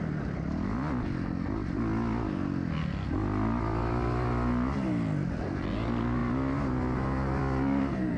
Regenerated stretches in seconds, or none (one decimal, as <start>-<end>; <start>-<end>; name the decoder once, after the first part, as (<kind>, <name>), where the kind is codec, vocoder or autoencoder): none